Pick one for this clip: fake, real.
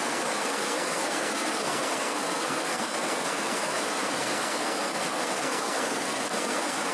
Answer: fake